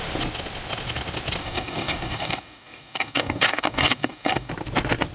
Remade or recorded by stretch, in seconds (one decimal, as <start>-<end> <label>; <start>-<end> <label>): 0.0-1.4 recorded; 1.4-4.5 remade; 4.5-5.1 recorded